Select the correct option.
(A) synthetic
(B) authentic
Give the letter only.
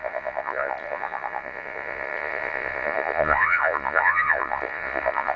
A